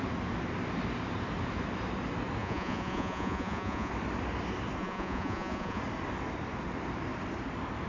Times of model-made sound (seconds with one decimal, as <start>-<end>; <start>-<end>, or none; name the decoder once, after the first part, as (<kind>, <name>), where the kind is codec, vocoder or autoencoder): 2.4-3.9 (vocoder, Vocos); 4.8-5.8